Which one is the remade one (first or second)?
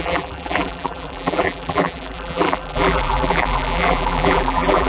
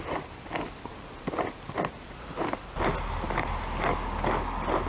first